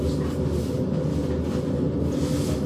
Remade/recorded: recorded